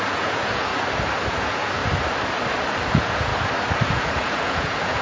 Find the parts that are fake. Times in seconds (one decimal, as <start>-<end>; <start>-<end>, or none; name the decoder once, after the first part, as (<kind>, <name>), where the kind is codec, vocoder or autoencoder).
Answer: 0.0-0.7 (vocoder, Vocos); 1.3-1.8; 2.9-3.3; 3.9-5.0